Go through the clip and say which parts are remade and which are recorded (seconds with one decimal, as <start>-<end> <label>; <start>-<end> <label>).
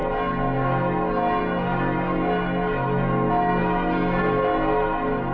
0.0-5.3 recorded